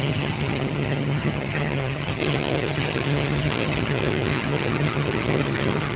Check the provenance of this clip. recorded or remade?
remade